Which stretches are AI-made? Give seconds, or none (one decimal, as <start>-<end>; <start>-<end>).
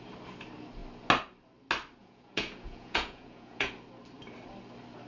2.0-3.7